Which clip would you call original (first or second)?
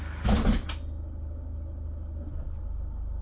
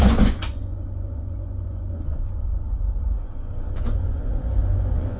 first